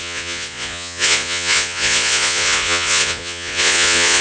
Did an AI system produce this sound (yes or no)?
yes